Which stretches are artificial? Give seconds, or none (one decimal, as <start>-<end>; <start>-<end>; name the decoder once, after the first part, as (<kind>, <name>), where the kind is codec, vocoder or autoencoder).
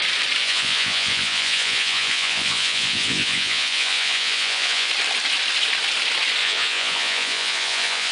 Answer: 0.4-4.9 (vocoder, Vocos); 6.4-8.1